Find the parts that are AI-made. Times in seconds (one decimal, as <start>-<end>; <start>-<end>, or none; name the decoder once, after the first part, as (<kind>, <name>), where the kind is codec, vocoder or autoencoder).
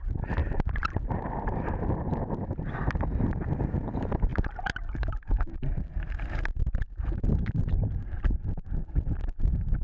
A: 0.0-2.1 (vocoder, BigVGAN v2); 3.1-9.8